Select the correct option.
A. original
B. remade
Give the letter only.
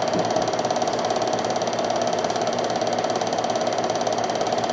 A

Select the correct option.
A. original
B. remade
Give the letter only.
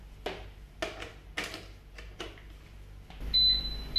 A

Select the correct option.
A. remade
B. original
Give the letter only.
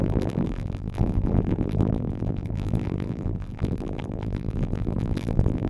A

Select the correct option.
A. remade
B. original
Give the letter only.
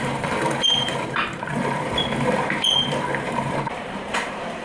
A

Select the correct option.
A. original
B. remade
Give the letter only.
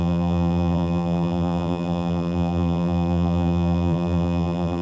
B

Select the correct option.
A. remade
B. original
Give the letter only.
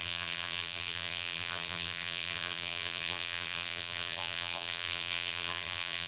A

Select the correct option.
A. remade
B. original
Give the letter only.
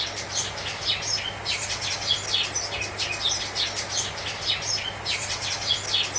B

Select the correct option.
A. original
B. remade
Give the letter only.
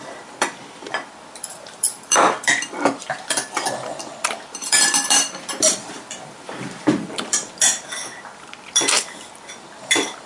B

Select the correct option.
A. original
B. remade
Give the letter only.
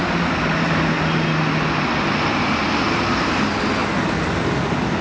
A